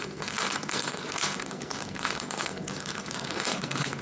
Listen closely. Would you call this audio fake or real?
fake